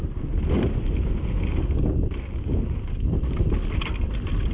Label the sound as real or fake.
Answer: real